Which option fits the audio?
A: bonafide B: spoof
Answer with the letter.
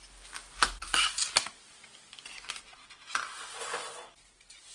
A